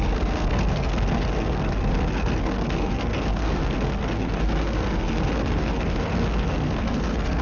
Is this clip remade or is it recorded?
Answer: remade